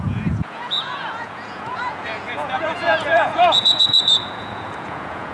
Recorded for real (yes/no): no